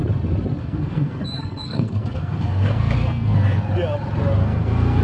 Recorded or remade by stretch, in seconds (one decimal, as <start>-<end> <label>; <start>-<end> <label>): 0.0-0.6 recorded; 0.6-3.6 remade; 3.6-4.4 recorded; 4.4-5.0 remade